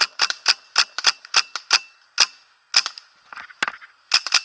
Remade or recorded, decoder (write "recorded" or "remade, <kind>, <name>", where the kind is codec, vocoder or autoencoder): recorded